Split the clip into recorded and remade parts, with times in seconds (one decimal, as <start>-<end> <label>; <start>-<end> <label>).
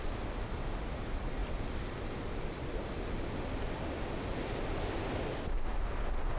0.0-6.4 recorded